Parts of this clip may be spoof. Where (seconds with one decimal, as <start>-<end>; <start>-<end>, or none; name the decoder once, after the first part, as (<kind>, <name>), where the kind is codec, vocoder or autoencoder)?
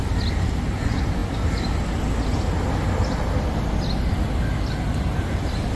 none